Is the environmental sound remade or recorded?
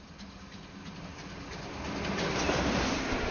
recorded